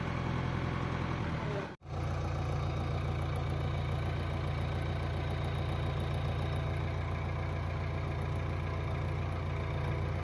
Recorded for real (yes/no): yes